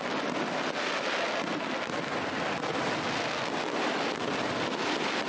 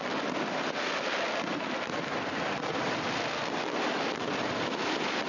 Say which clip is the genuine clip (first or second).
first